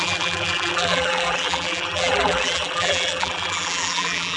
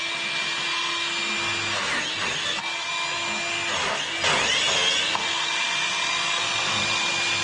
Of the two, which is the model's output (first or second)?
first